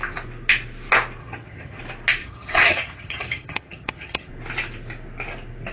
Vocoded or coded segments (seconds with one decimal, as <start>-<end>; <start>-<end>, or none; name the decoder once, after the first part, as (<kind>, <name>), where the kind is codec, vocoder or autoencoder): 1.2-1.8 (vocoder, HiFi-GAN); 2.2-4.3